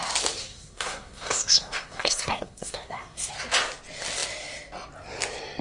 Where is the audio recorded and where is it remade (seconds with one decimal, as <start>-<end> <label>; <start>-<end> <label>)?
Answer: 0.0-0.4 recorded; 0.4-3.3 remade; 3.3-5.6 recorded